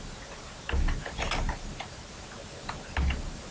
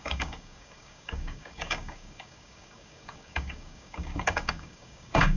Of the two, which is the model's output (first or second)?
second